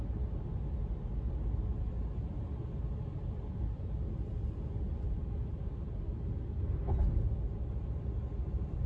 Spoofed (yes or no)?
no